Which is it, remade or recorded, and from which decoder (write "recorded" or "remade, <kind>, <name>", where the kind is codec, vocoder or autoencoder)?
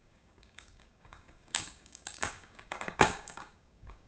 remade, codec, DAC